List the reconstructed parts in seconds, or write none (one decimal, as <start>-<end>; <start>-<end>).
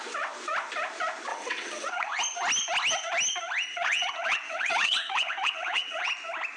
1.3-2.2; 3.7-6.1